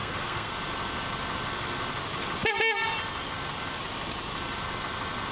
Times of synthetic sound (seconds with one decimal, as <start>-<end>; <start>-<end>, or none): 0.0-0.5